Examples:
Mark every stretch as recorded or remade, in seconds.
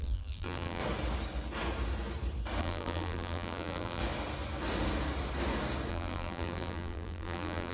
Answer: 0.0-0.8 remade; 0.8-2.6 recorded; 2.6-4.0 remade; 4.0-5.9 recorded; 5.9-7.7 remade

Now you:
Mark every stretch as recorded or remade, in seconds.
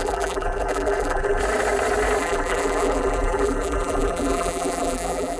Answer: 0.0-1.4 remade; 1.4-2.2 recorded; 2.2-5.4 remade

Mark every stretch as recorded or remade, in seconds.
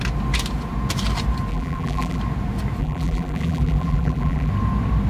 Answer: 0.0-1.5 recorded; 1.5-2.2 remade; 2.2-2.8 recorded; 2.8-4.5 remade; 4.5-5.1 recorded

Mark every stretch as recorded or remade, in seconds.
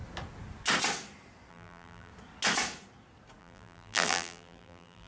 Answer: 0.0-1.5 recorded; 1.5-2.1 remade; 2.1-3.4 recorded; 3.4-5.1 remade